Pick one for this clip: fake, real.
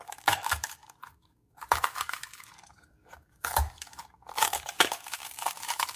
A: fake